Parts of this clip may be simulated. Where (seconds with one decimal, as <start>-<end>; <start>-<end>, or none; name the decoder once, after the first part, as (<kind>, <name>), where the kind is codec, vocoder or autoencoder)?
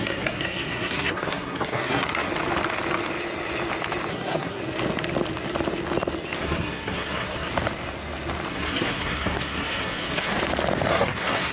0.0-2.3 (codec, SNAC); 4.1-4.6; 6.4-7.5; 8.5-10.3; 10.9-11.5